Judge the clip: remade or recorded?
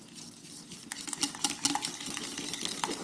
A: recorded